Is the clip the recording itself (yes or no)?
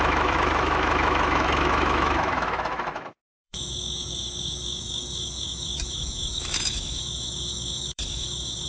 no